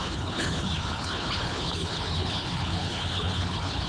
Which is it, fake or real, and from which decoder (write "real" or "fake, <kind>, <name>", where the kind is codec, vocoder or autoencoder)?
fake, codec, HILCodec